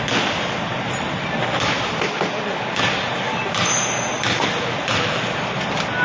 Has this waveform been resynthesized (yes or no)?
no